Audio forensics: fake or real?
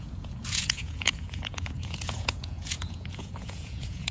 fake